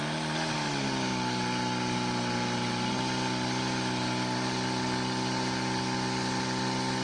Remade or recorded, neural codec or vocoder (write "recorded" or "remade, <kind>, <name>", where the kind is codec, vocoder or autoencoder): recorded